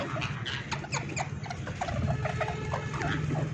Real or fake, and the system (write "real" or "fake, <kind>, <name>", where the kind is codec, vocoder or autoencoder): real